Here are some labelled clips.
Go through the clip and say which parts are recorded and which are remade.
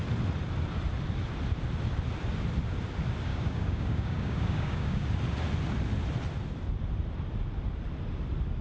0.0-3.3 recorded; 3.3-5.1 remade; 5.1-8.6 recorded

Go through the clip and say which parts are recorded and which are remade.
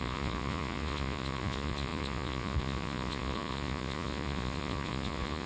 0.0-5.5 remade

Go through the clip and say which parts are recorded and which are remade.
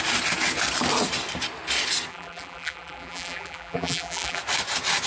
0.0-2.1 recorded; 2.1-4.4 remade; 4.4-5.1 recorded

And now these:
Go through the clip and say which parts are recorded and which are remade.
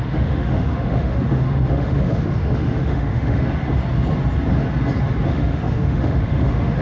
0.0-3.4 remade; 3.4-5.3 recorded; 5.3-6.8 remade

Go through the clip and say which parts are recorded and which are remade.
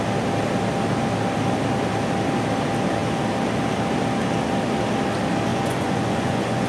0.0-5.5 recorded; 5.5-6.7 remade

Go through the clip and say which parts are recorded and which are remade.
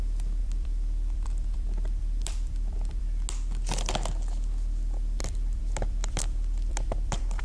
0.0-0.4 recorded; 0.4-3.0 remade; 3.0-5.2 recorded; 5.2-7.4 remade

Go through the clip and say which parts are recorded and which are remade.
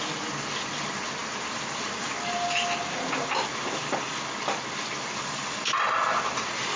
0.0-6.8 recorded